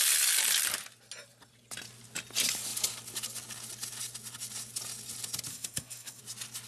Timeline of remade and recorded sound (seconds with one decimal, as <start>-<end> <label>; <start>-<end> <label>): 0.0-5.5 recorded; 5.5-6.2 remade; 6.2-6.7 recorded